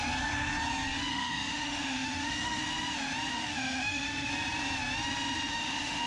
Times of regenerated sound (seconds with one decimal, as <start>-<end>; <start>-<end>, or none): 1.1-2.6; 3.3-4.3; 5.5-6.1